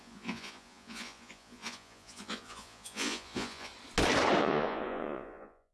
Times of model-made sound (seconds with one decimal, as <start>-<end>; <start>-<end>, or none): 0.0-3.7; 4.4-5.7